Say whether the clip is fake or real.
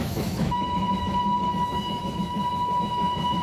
fake